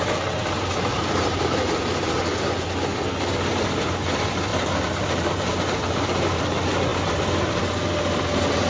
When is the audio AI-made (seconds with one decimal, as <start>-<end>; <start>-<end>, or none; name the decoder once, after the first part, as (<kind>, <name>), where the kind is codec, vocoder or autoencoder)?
0.9-2.1 (vocoder, BigVGAN v2); 4.5-6.4